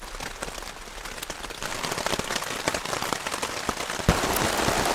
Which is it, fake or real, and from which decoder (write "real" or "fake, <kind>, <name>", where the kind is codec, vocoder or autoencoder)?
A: real